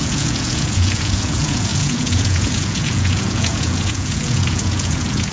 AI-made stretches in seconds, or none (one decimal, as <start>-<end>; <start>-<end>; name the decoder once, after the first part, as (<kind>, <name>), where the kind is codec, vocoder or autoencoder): 0.0-5.3 (vocoder, Vocos)